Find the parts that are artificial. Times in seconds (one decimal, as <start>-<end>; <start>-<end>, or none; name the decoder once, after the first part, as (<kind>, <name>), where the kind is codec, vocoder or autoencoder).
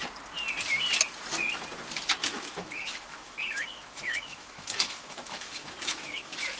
2.3-6.6 (autoencoder, DAC-VAE)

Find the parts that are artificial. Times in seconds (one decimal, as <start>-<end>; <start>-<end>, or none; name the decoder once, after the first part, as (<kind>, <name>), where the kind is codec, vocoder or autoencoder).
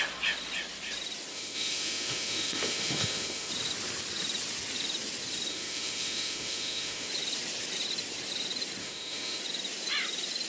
1.3-3.5 (autoencoder, DAC-VAE); 5.5-7.1; 8.8-9.4